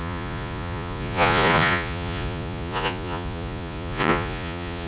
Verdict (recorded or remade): remade